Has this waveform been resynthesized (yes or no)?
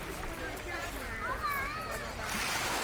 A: no